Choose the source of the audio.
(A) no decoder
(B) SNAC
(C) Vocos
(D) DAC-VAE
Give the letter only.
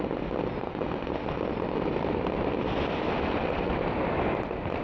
A